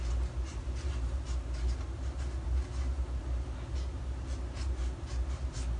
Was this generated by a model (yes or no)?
no